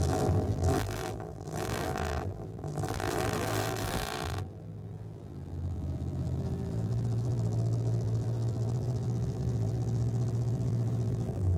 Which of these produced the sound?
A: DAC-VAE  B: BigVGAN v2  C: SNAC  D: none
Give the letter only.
B